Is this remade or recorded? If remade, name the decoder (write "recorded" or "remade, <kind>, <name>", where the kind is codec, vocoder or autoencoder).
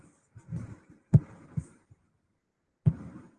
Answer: remade, vocoder, BigVGAN v2